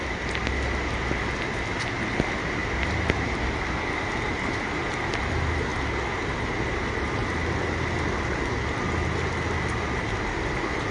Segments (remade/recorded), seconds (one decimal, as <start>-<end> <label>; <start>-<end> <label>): 0.0-10.9 recorded